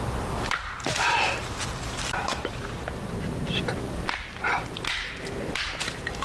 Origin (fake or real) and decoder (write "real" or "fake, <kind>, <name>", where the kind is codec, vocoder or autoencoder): real